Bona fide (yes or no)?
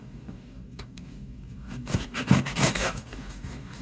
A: no